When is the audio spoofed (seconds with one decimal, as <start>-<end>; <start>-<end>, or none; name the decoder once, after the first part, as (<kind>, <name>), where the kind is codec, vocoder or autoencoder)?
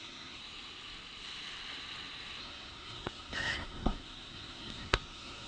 0.0-0.4 (codec, SNAC); 2.4-5.5